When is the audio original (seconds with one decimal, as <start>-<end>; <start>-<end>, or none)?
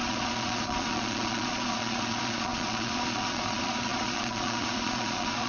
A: none